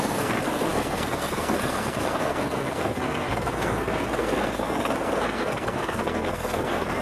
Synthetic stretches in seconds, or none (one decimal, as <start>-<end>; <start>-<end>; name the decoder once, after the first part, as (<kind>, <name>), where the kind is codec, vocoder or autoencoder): 0.0-7.0 (codec, SNAC)